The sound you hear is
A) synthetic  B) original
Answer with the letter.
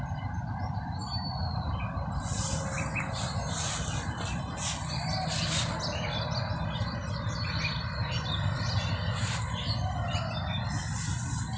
B